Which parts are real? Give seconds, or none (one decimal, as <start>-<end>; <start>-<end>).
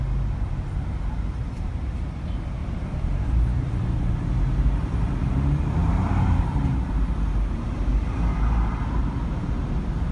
0.0-1.4; 2.0-2.6; 3.7-5.8; 7.1-10.1